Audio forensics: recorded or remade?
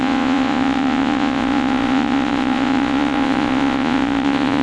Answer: remade